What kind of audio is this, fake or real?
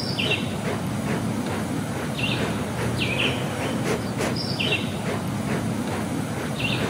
real